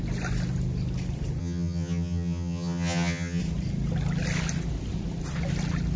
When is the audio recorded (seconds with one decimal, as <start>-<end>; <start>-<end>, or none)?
0.0-1.4; 3.4-6.0